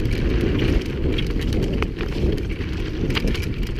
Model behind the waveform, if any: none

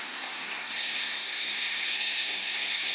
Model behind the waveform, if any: codec, SNAC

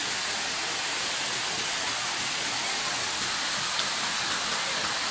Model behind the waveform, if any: none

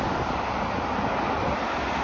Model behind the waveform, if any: none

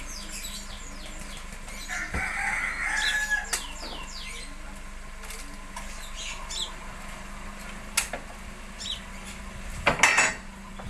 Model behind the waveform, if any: none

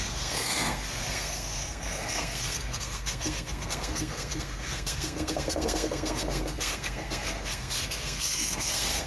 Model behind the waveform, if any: codec, SNAC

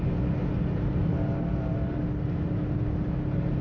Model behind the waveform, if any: none